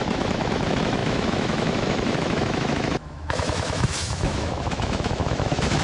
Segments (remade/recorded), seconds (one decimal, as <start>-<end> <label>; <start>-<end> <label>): 0.0-5.8 remade